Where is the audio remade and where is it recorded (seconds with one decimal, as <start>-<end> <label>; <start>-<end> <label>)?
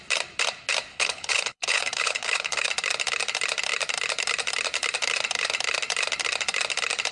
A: 0.0-0.9 recorded; 0.9-2.7 remade; 2.7-7.1 recorded